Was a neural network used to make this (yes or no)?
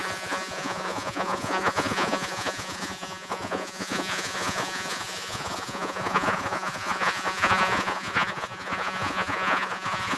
yes